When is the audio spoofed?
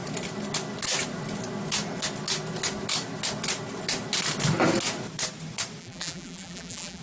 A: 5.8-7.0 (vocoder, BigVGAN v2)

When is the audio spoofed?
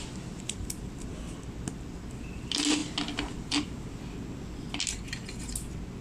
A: none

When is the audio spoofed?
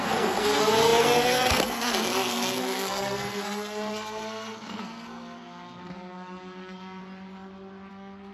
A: 0.0-7.0 (codec, SNAC); 7.9-8.3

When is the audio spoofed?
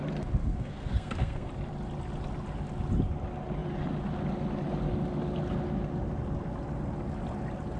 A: 0.4-1.5 (codec, SNAC)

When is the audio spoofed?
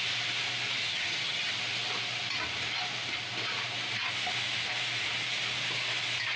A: 0.8-1.5 (vocoder, HiFi-GAN)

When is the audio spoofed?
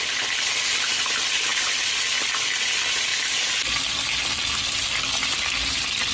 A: none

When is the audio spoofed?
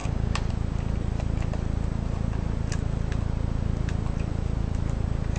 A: 0.0-0.5 (codec, DAC)